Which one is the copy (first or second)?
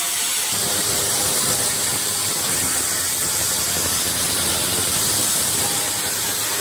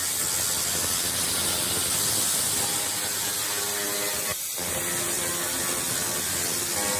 first